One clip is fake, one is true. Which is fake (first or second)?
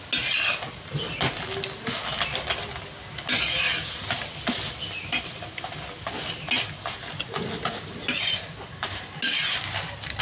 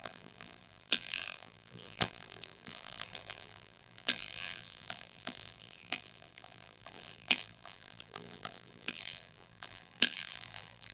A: second